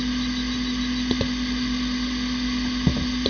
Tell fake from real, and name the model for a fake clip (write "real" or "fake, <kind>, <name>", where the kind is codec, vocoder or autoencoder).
real